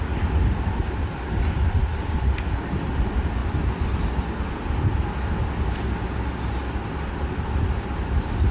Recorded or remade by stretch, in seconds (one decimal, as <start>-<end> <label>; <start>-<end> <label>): 0.0-8.5 recorded